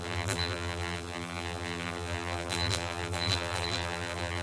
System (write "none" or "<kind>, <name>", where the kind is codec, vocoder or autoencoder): vocoder, BigVGAN v2